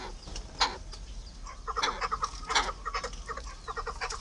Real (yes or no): yes